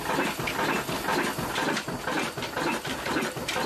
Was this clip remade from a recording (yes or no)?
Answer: no